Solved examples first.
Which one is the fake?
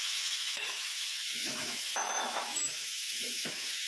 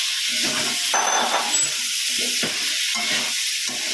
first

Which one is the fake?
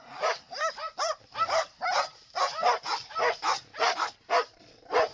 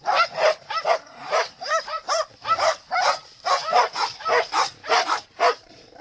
second